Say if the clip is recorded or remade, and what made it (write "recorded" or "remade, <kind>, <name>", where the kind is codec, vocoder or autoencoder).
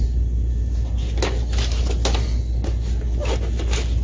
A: recorded